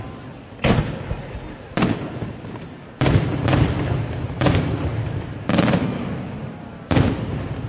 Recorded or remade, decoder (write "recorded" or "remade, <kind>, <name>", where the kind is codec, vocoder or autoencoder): recorded